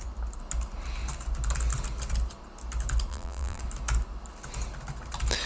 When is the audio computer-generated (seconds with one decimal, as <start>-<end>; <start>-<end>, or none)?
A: 3.1-3.6